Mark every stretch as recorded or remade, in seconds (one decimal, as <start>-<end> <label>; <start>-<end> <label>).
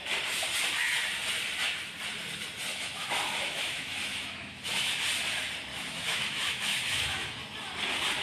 0.0-2.7 recorded; 2.7-4.9 remade; 4.9-5.7 recorded; 5.7-7.4 remade; 7.4-8.2 recorded